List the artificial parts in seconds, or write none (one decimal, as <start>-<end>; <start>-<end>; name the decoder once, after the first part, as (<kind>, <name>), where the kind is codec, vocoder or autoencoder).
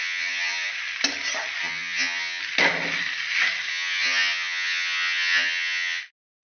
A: 0.0-0.7 (vocoder, HiFi-GAN); 1.6-2.4; 3.7-6.0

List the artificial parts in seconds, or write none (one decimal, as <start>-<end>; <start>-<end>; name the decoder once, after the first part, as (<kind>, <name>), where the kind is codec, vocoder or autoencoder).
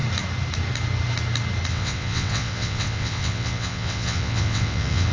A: 1.7-5.1 (vocoder, WaveNeXt)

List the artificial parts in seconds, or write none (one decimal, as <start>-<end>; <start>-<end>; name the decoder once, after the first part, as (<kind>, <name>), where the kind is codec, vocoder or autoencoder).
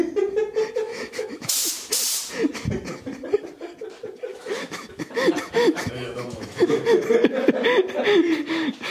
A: 0.9-1.5 (autoencoder, DAC-VAE); 4.3-7.0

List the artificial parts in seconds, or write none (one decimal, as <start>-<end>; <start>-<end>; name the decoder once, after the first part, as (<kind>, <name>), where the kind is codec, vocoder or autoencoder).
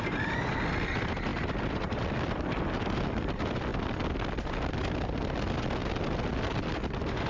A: 3.7-4.5 (vocoder, BigVGAN v2); 5.8-6.7